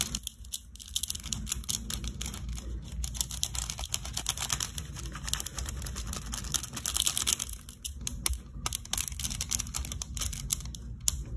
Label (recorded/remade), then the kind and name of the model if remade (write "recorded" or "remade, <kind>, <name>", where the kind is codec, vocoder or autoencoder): recorded